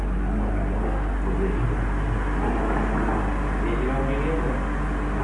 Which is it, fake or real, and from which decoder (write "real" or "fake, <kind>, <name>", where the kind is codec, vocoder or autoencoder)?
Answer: real